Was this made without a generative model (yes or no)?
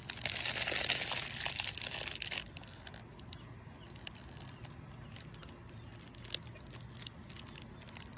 yes